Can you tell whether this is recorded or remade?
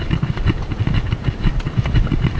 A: recorded